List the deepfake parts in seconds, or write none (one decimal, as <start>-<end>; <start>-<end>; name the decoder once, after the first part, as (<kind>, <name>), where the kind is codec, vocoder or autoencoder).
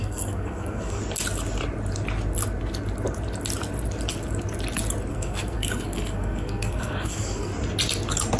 0.0-1.0 (codec, SNAC); 5.1-7.5